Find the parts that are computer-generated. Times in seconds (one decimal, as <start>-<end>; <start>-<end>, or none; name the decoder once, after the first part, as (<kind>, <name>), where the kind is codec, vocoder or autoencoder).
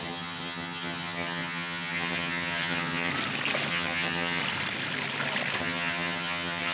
0.0-3.1 (vocoder, HiFi-GAN); 3.7-4.4; 5.6-6.7